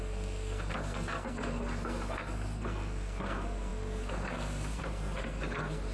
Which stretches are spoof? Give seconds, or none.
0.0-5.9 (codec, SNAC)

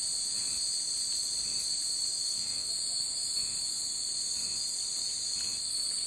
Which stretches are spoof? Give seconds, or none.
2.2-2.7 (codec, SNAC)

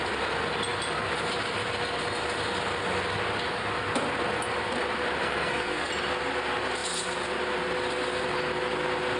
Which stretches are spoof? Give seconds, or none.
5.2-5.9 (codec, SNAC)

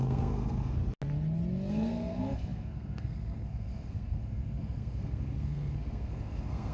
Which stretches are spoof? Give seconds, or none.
0.0-0.8 (codec, SNAC); 1.7-6.7

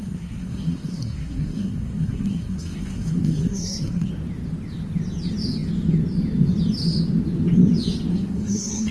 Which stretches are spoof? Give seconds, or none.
0.0-4.1 (codec, SNAC); 8.1-8.9

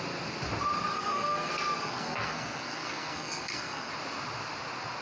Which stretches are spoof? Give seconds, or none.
0.9-3.9 (codec, SNAC)

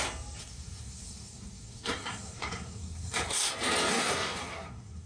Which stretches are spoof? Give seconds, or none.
0.4-3.5 (codec, SNAC); 3.9-5.1

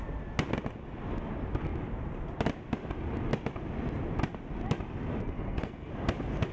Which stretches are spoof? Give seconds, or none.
5.2-5.9 (codec, SNAC)